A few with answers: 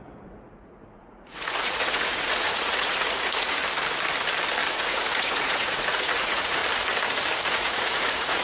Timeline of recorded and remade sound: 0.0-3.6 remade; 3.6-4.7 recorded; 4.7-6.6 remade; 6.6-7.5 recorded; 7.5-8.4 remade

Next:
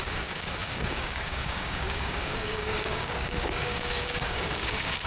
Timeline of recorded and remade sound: 0.0-5.1 remade

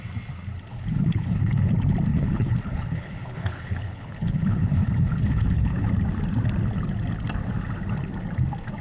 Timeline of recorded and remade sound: 0.0-0.7 recorded; 0.7-1.7 remade; 1.7-2.1 recorded; 2.1-5.9 remade; 5.9-8.8 recorded